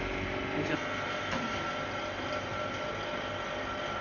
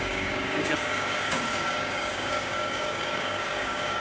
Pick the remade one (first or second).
second